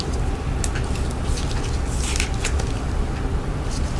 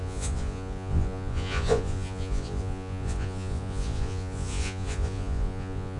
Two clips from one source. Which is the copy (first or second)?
second